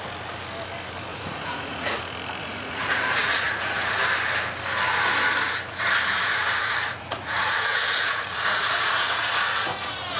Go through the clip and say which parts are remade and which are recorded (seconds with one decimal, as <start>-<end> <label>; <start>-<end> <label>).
0.0-1.1 recorded; 1.1-2.0 remade; 2.0-2.4 recorded; 2.4-4.0 remade; 4.0-6.1 recorded; 6.1-10.2 remade